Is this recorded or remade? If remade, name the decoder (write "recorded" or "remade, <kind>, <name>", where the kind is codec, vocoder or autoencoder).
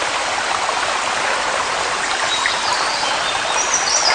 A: recorded